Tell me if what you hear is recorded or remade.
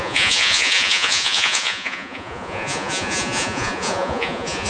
remade